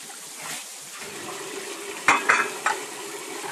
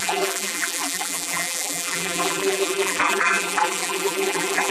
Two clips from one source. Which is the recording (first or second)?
first